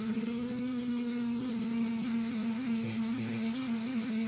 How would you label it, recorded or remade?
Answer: remade